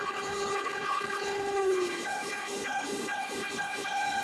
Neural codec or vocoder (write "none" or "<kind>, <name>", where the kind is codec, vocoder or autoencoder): codec, HILCodec